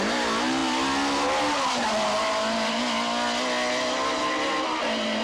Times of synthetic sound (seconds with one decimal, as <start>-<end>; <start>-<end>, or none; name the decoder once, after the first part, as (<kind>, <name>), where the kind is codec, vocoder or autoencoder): none